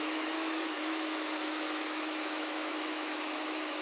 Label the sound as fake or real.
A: fake